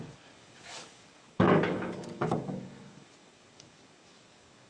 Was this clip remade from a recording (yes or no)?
yes